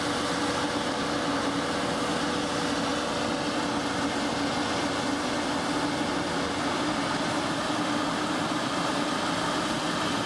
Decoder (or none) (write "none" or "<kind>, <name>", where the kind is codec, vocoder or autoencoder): none